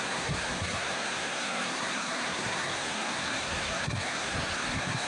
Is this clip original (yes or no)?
no